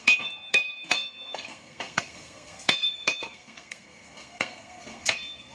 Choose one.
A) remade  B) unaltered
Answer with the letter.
A